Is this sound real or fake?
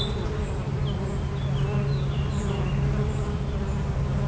real